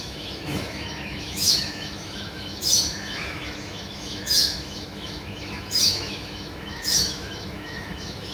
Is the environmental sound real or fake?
fake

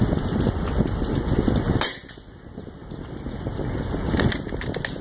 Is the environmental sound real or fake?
real